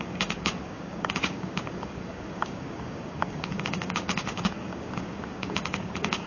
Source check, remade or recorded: remade